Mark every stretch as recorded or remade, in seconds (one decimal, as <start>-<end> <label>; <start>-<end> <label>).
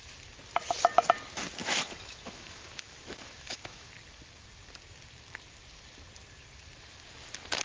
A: 0.0-1.6 recorded; 1.6-3.9 remade; 3.9-7.6 recorded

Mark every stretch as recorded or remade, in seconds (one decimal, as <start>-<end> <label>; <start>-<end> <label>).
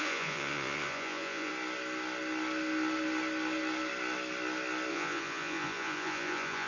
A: 0.0-1.5 remade; 1.5-4.9 recorded; 4.9-6.7 remade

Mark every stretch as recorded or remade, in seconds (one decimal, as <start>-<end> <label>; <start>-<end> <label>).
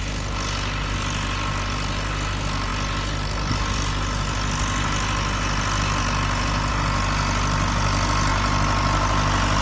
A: 0.0-9.6 recorded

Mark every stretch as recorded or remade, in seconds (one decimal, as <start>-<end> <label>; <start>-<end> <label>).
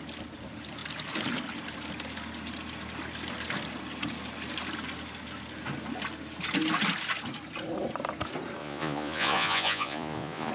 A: 0.0-8.6 recorded; 8.6-10.5 remade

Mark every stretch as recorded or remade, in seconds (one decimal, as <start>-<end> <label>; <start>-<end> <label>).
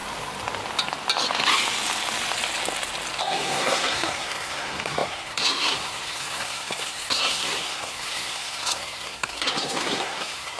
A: 0.0-3.2 recorded; 3.2-10.6 remade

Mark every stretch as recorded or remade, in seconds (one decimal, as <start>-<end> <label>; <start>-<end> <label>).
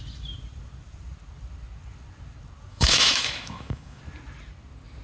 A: 0.0-2.7 recorded; 2.7-4.0 remade; 4.0-5.0 recorded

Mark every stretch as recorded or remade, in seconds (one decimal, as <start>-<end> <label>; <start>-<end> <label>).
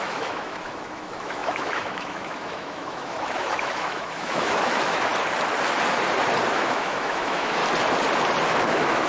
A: 0.0-5.1 remade; 5.1-6.5 recorded; 6.5-7.6 remade; 7.6-8.6 recorded; 8.6-9.1 remade